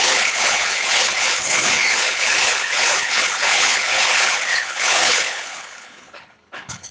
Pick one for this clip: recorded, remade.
remade